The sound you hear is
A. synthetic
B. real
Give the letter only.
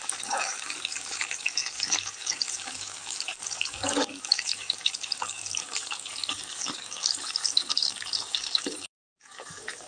A